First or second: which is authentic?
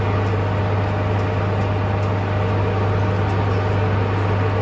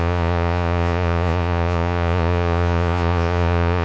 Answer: first